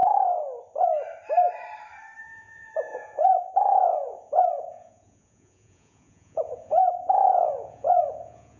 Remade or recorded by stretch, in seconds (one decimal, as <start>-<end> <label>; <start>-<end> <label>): 0.0-2.2 recorded; 2.2-8.6 remade